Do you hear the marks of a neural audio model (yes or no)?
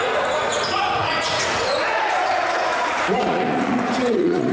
yes